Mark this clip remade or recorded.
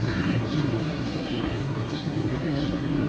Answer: remade